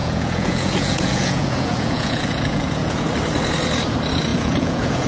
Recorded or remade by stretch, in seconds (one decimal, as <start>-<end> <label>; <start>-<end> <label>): 0.0-3.1 remade; 3.1-4.3 recorded; 4.3-5.1 remade